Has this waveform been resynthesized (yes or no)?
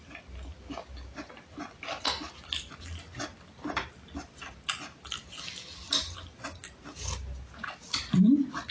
no